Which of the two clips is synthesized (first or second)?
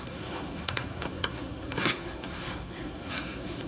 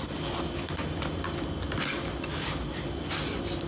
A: first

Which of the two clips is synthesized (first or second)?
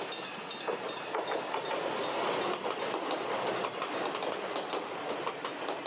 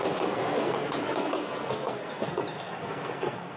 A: second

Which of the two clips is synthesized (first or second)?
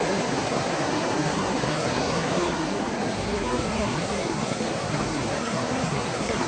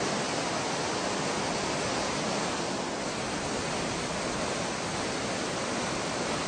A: first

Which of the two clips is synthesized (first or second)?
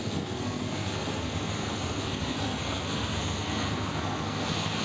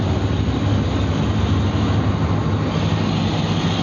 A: first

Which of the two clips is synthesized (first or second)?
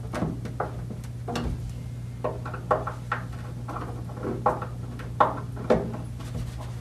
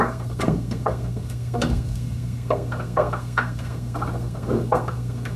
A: second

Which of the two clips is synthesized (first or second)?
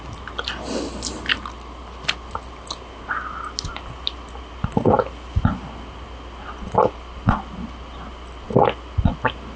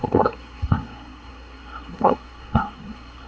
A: second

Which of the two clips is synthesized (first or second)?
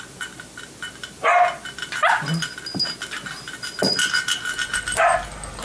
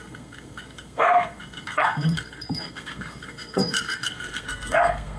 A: second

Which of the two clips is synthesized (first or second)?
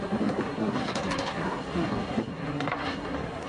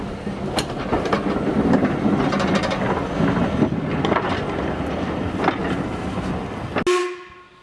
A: first